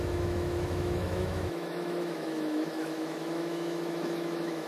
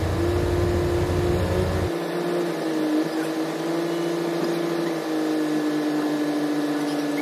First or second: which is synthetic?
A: first